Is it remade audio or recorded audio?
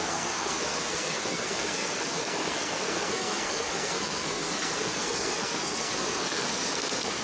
remade